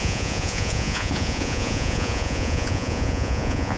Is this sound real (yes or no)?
no